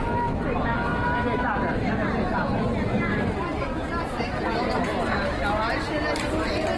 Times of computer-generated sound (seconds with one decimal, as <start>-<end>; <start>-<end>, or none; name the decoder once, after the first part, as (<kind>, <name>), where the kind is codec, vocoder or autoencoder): none